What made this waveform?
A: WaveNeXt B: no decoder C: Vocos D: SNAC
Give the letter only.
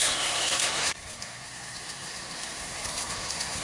D